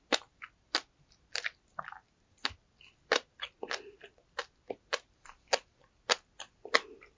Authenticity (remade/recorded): recorded